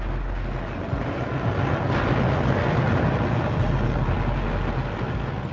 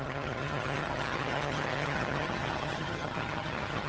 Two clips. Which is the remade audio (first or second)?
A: second